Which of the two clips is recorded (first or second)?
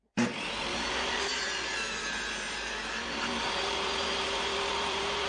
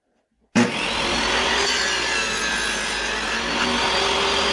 second